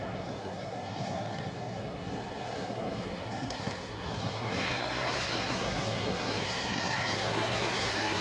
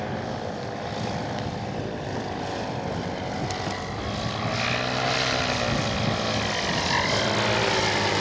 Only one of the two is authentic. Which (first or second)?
second